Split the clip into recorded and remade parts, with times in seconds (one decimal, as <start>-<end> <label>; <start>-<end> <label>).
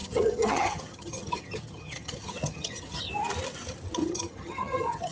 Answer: 0.0-3.1 remade; 3.1-4.0 recorded; 4.0-5.1 remade